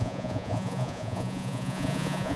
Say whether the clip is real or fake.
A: fake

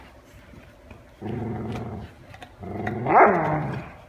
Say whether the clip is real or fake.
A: real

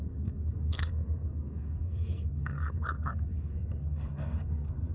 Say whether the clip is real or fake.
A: fake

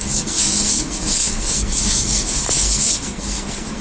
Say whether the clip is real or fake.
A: fake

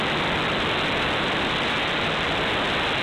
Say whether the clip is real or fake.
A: real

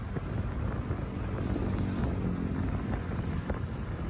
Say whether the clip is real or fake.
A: real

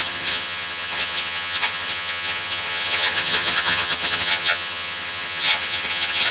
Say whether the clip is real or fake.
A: fake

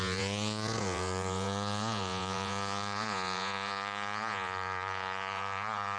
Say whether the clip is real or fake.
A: fake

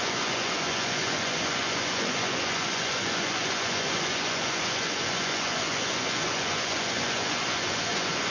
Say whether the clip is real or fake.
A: fake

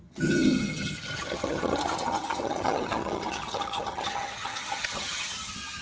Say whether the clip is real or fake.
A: fake